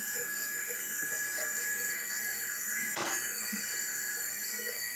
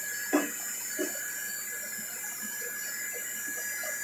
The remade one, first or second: first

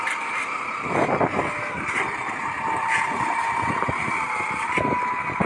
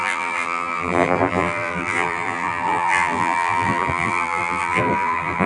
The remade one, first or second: second